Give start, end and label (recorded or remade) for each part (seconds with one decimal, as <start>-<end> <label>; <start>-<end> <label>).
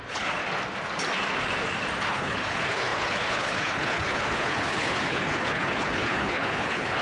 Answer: 0.0-0.4 remade; 0.4-2.1 recorded; 2.1-7.0 remade